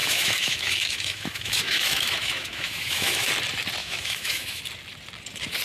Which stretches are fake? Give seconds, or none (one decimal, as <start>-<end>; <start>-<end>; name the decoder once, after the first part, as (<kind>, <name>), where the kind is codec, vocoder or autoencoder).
0.0-3.3 (autoencoder, DAC-VAE); 3.8-4.6